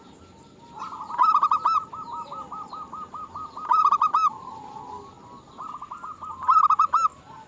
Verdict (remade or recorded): recorded